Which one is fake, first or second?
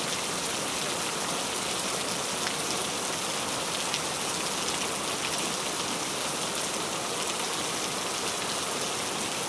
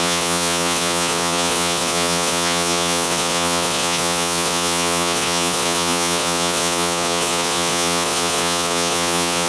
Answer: second